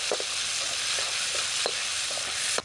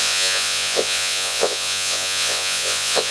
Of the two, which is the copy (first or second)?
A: second